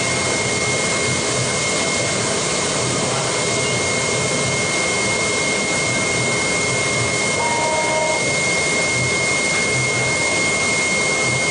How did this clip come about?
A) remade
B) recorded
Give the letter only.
B